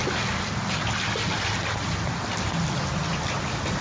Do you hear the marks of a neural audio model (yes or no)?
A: no